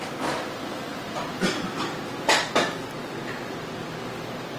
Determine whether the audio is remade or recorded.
recorded